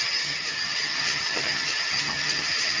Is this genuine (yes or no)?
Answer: no